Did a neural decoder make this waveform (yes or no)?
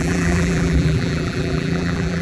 yes